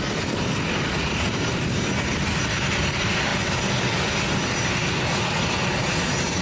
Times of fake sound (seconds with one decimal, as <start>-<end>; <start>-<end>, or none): none